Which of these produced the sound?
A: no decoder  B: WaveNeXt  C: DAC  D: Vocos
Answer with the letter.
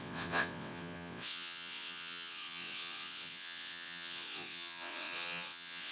B